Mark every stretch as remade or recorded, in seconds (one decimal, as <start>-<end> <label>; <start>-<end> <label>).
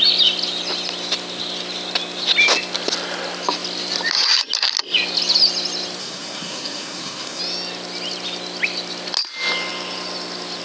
0.0-6.0 recorded; 6.0-7.4 remade; 7.4-10.6 recorded